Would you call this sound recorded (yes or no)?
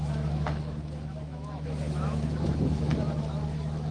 no